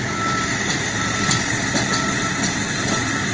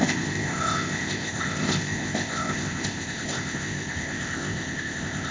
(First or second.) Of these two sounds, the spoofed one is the second